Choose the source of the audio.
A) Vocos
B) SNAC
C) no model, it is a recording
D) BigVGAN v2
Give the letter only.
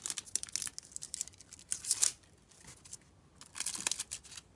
C